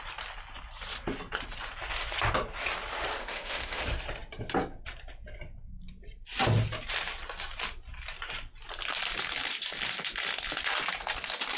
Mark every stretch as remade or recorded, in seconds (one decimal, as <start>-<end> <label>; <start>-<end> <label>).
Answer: 0.0-3.2 recorded; 3.2-3.8 remade; 3.8-11.6 recorded